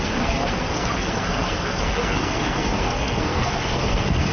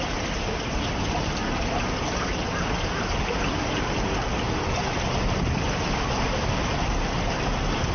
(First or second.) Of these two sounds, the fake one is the first